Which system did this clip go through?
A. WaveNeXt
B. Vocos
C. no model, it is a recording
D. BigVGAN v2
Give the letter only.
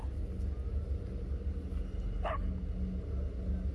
C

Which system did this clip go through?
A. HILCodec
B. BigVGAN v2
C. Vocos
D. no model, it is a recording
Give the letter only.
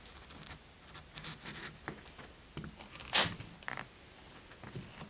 D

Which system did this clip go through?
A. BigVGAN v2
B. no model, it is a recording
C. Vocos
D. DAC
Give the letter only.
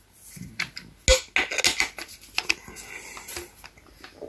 B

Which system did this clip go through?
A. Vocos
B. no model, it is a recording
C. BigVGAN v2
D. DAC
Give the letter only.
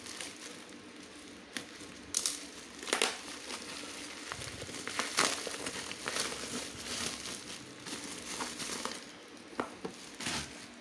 B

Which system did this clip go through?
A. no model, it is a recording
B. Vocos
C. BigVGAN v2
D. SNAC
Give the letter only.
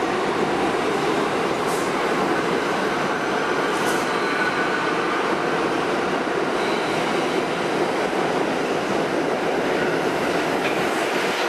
A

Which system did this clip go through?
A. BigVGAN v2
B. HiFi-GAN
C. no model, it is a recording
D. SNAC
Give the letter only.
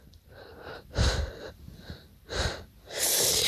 A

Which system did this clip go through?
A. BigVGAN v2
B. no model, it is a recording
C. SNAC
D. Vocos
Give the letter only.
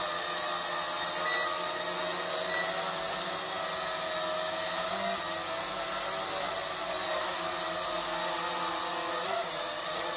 B